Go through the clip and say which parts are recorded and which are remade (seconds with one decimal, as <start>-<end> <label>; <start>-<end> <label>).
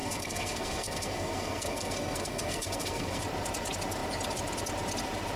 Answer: 0.0-3.2 remade; 3.2-5.4 recorded